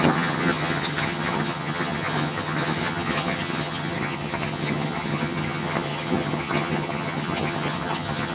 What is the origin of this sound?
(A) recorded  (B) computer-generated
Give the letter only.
B